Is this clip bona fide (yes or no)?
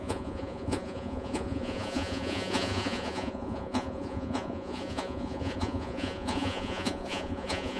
no